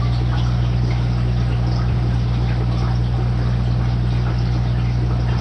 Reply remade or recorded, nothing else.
recorded